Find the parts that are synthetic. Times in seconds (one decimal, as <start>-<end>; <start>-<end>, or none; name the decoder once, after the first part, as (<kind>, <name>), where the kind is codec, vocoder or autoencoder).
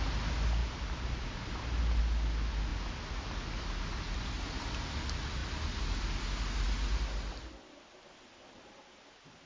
none